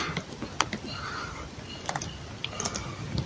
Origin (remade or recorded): recorded